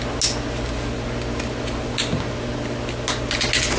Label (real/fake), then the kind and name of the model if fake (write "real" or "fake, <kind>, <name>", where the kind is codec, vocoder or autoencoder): real